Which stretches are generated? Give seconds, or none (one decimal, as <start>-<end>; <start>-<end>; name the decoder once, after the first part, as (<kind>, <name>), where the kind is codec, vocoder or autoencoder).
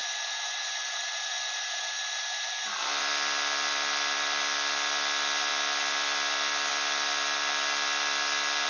0.0-3.0 (vocoder, BigVGAN v2)